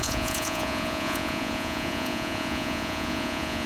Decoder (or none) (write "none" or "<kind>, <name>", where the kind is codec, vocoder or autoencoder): vocoder, Vocos